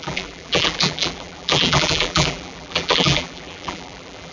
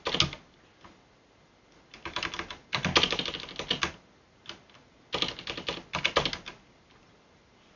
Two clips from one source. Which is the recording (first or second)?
second